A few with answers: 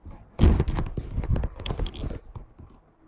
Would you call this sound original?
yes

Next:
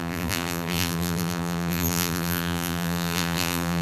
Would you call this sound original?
no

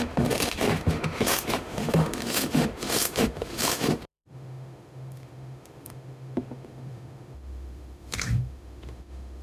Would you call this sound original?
no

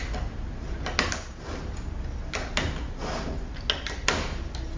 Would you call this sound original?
yes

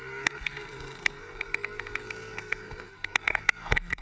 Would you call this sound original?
no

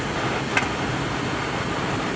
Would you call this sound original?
yes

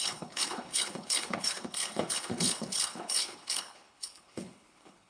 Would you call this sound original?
no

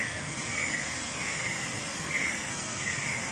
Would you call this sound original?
no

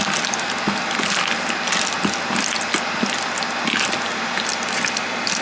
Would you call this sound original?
yes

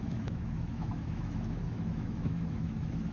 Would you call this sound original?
no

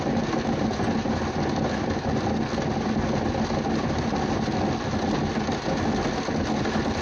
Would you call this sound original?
yes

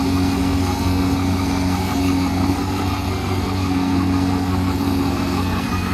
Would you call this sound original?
no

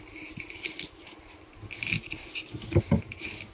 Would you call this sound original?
yes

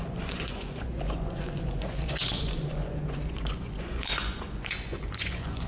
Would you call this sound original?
no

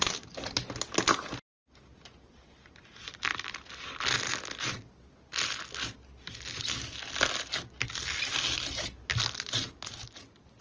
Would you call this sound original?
yes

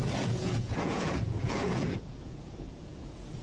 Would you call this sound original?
no